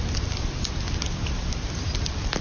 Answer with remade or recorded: recorded